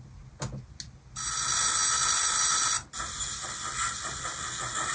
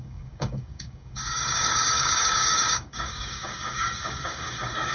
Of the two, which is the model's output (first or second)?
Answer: second